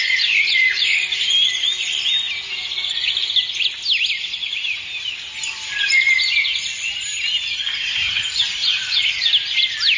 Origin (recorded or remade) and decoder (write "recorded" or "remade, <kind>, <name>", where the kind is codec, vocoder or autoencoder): recorded